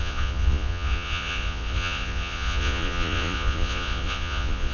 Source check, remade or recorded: remade